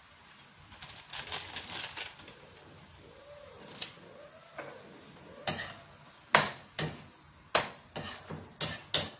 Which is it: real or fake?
real